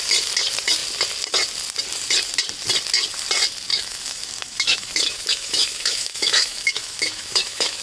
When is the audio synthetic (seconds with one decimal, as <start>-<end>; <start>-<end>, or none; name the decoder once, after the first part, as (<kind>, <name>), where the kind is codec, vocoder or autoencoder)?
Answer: 3.7-7.8 (autoencoder, DAC-VAE)